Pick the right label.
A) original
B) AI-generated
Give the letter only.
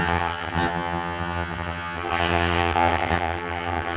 B